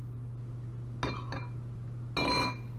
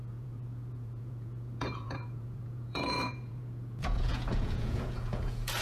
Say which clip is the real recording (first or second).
first